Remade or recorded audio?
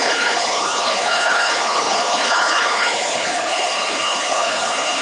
remade